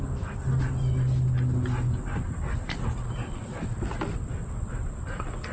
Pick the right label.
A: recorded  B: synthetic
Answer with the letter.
A